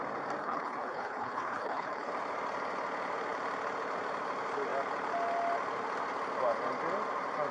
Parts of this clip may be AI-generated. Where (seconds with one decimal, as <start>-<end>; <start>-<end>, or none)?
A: 0.4-2.1